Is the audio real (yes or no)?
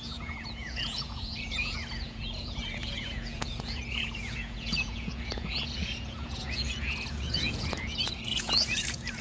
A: no